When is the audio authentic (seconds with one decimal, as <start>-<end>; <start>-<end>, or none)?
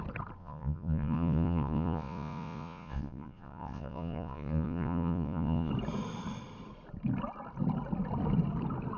0.0-0.4; 5.7-9.0